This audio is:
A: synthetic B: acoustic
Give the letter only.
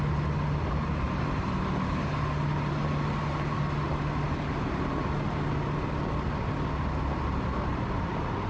B